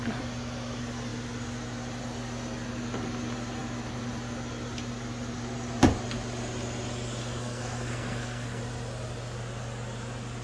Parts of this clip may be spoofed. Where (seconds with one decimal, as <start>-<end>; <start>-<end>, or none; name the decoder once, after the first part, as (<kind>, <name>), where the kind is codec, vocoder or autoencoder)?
7.2-8.6 (codec, SNAC)